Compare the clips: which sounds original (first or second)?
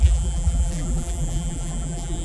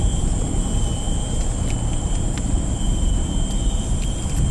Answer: second